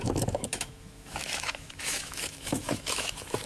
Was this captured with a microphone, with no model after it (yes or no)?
no